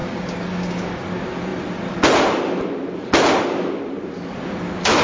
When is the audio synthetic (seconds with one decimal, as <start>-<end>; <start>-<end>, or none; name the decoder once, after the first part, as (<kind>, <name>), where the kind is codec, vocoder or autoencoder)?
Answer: 0.0-1.0 (codec, DAC)